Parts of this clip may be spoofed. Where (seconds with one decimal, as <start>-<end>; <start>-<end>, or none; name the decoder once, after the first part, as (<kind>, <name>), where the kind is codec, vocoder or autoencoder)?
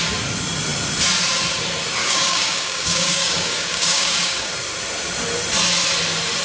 2.0-4.5 (codec, DAC)